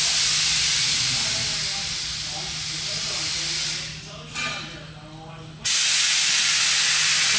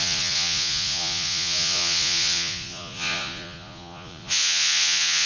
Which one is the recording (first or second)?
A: first